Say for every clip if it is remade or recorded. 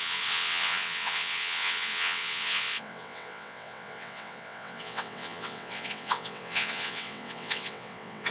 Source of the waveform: remade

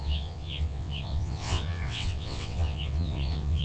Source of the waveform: remade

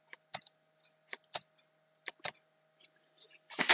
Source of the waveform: recorded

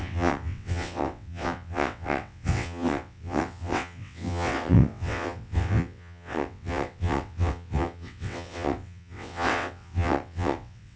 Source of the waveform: remade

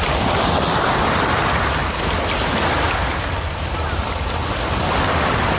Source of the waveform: recorded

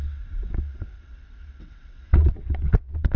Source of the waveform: remade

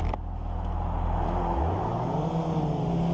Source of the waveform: recorded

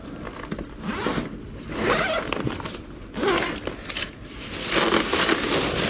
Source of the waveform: recorded